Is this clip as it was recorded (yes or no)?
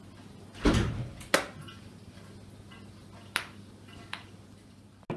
yes